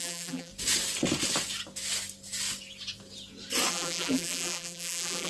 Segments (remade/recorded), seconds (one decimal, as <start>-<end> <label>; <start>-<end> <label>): 0.0-0.5 remade; 0.5-3.7 recorded; 3.7-5.3 remade